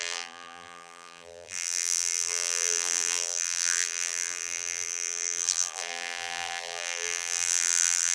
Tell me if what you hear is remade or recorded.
remade